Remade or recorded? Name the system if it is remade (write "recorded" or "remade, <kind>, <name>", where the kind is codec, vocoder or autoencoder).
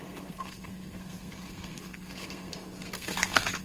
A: remade, codec, SNAC